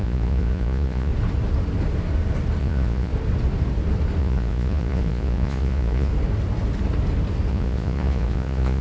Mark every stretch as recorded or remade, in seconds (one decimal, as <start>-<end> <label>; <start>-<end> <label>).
0.0-1.1 remade; 1.1-2.6 recorded; 2.6-3.1 remade; 3.1-4.2 recorded; 4.2-6.1 remade; 6.1-7.5 recorded; 7.5-8.8 remade